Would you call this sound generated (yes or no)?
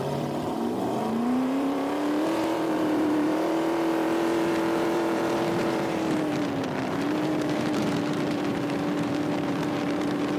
yes